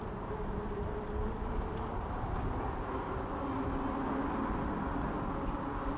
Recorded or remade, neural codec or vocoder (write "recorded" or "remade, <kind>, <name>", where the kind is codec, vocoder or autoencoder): recorded